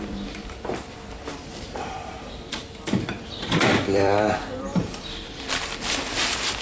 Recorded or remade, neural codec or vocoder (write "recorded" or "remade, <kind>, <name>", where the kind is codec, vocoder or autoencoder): remade, vocoder, BigVGAN v2